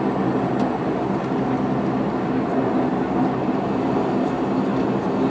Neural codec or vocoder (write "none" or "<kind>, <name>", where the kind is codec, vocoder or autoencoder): none